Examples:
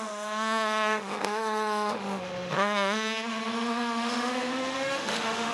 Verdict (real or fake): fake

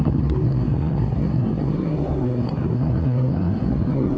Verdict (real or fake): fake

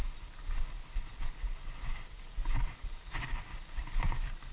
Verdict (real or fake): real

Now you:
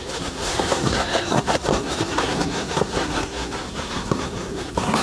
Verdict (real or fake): fake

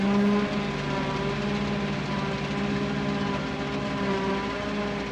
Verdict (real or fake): real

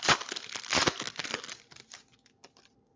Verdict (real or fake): real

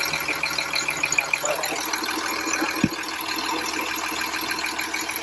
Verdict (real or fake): real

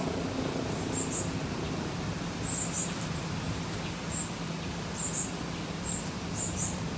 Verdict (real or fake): real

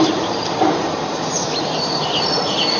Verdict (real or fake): real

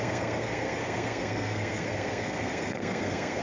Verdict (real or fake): fake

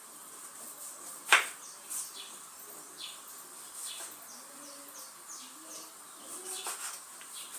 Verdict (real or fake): real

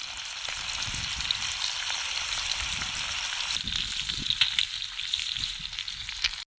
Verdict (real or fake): real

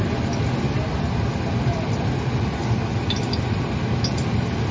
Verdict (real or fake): real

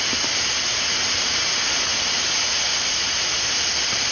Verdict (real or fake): real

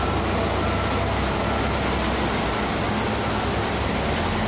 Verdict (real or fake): real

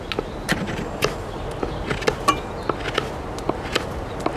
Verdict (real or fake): real